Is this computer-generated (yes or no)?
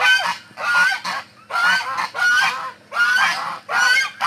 no